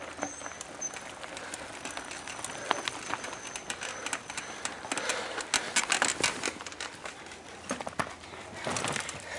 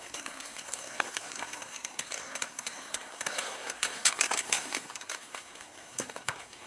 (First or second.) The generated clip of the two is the second